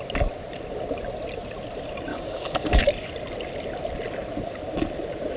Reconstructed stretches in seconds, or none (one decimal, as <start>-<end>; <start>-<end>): 2.1-2.8